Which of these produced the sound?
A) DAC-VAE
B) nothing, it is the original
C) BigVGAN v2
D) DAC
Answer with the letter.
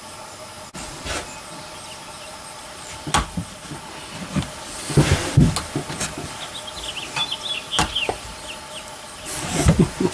B